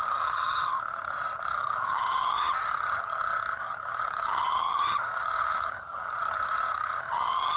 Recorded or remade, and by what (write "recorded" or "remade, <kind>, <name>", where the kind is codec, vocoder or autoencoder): remade, vocoder, HiFi-GAN